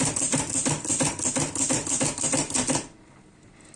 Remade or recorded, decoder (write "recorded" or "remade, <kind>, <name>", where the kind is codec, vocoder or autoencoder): recorded